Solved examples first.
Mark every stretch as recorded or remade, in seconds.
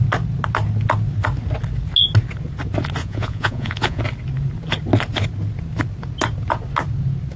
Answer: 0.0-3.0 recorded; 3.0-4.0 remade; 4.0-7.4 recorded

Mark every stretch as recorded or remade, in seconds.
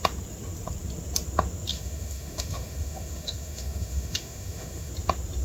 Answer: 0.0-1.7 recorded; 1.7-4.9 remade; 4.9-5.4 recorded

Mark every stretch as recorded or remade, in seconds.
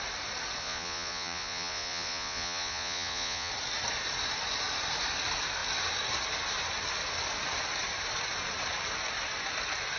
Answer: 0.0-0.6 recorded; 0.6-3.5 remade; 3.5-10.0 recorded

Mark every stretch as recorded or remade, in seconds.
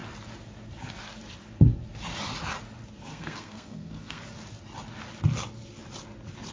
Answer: 0.0-3.1 recorded; 3.1-4.2 remade; 4.2-6.5 recorded